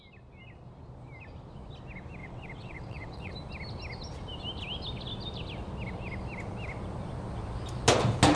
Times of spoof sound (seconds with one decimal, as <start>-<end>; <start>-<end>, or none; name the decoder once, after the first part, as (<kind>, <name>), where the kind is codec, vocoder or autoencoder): 2.2-3.3 (vocoder, WaveNeXt)